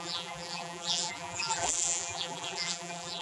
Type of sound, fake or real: fake